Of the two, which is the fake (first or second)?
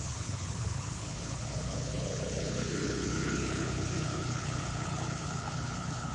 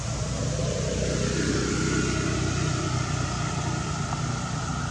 first